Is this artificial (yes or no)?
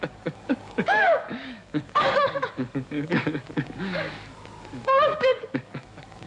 yes